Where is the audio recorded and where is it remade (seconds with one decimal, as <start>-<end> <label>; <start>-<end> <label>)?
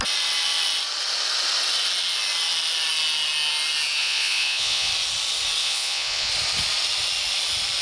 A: 0.0-4.0 recorded; 4.0-4.9 remade; 4.9-5.6 recorded; 5.6-6.3 remade; 6.3-7.8 recorded